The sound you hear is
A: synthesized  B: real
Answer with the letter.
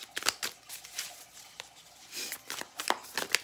B